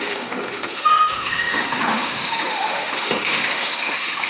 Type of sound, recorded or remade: remade